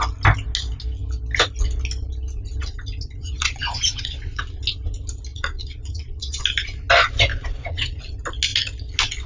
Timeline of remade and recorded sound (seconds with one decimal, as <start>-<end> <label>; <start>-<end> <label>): 0.0-3.2 recorded; 3.2-4.4 remade; 4.4-5.3 recorded; 5.3-6.4 remade; 6.4-7.3 recorded; 7.3-8.0 remade; 8.0-9.3 recorded